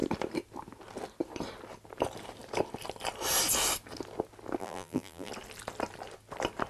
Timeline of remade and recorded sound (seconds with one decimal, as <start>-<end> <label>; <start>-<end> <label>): 0.0-4.6 recorded; 4.6-5.3 remade; 5.3-6.7 recorded